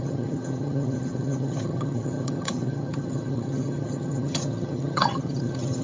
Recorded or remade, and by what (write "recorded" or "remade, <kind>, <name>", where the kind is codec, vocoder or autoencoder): remade, vocoder, HiFi-GAN